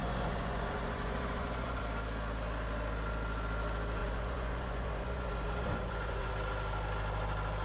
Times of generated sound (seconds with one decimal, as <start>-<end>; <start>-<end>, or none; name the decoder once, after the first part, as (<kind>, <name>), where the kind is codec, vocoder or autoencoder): 0.0-1.8 (vocoder, Vocos); 4.0-6.3